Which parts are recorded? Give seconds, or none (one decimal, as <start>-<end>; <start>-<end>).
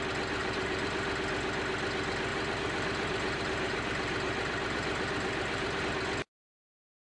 0.0-0.4; 0.9-2.3; 5.8-7.1